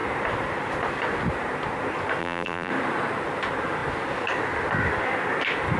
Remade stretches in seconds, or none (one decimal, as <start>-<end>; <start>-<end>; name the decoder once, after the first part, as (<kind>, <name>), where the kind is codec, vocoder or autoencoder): 2.2-2.7 (vocoder, BigVGAN v2)

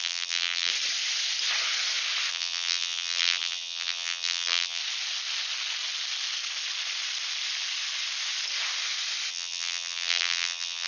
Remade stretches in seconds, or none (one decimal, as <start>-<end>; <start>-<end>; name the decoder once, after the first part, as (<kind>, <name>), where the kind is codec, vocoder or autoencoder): 0.0-0.7 (vocoder, BigVGAN v2); 2.3-4.8; 9.3-10.9

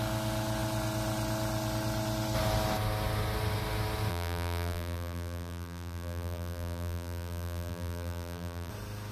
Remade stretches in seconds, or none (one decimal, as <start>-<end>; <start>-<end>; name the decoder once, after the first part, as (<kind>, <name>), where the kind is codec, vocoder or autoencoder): 4.1-8.7 (vocoder, BigVGAN v2)